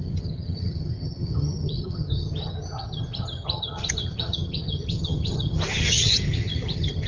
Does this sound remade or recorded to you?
remade